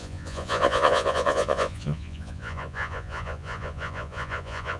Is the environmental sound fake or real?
fake